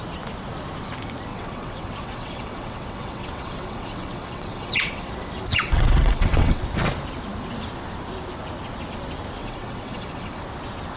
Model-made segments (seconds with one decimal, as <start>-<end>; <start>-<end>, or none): 1.3-5.1; 5.5-6.6; 9.4-10.4